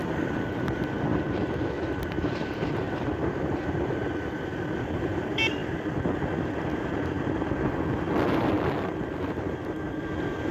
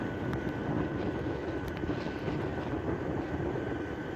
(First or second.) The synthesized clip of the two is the first